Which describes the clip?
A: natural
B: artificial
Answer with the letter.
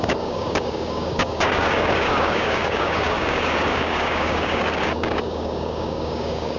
B